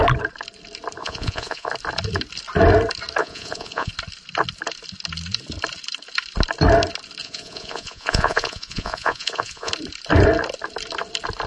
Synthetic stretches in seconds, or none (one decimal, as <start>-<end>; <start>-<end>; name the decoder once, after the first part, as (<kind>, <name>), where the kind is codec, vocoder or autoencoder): 1.0-1.7 (vocoder, Vocos); 3.2-3.9; 7.2-9.7